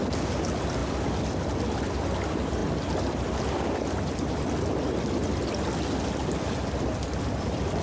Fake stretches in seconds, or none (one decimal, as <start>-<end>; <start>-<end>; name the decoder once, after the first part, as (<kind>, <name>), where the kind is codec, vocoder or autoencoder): none